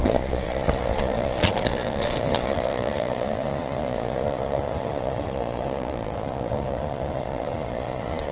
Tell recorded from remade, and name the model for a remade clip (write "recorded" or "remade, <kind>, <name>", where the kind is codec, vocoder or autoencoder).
remade, vocoder, Vocos